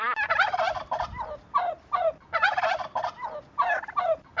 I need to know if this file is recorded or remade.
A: recorded